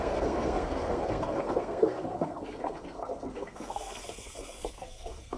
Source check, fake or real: fake